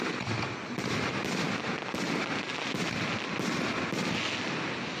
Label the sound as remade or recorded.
recorded